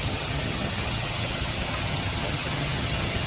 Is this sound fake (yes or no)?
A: yes